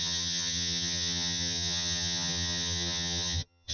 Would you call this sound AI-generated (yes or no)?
yes